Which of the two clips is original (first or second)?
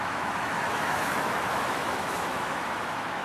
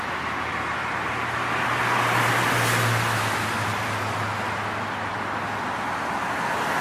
second